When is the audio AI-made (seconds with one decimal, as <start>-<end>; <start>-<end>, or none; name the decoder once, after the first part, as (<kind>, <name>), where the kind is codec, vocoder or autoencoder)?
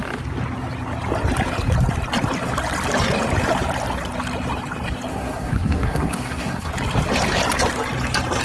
5.1-6.7 (codec, SNAC)